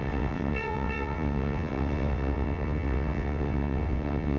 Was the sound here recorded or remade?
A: remade